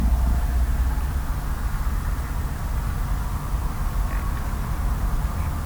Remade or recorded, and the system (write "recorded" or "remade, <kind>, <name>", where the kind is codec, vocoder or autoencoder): recorded